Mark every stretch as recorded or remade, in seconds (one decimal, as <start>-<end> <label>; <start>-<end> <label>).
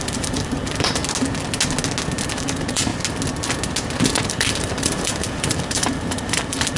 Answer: 0.0-1.0 remade; 1.0-2.3 recorded; 2.3-2.9 remade; 2.9-4.2 recorded; 4.2-6.8 remade